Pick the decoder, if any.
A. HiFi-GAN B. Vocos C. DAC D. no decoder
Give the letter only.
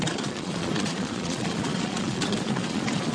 B